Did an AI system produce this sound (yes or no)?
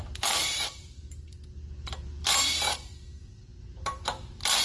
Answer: yes